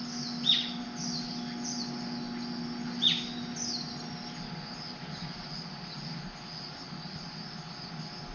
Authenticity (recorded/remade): recorded